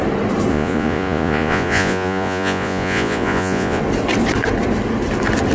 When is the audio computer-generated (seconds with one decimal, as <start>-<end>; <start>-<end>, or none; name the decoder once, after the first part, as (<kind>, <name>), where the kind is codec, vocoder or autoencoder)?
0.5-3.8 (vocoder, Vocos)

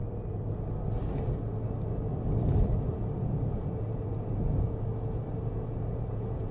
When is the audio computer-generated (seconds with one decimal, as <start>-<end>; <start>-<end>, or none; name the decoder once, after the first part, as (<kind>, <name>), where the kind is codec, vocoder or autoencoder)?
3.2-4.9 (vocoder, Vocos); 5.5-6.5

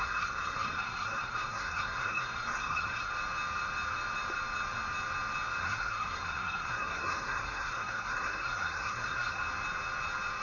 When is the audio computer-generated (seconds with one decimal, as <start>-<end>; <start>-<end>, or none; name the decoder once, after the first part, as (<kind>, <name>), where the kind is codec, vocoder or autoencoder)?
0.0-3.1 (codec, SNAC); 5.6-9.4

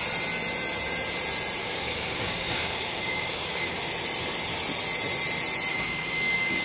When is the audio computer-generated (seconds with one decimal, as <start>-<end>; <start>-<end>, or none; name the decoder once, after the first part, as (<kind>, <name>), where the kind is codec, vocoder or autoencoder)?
1.6-3.8 (codec, DAC); 5.7-6.6

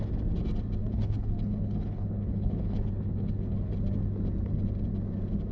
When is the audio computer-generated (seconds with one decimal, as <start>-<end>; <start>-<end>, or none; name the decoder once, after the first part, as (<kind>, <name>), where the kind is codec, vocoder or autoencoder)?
0.8-3.7 (codec, HILCodec)